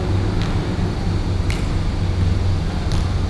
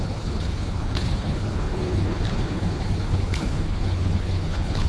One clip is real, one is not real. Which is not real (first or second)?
second